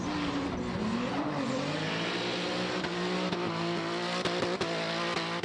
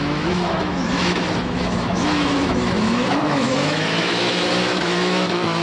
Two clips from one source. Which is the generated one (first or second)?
second